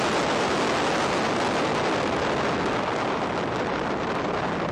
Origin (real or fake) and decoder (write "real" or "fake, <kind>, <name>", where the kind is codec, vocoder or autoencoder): real